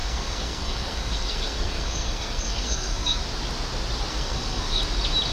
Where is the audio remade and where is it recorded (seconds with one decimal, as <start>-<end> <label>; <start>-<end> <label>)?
0.0-3.2 remade; 3.2-4.1 recorded; 4.1-4.8 remade; 4.8-5.3 recorded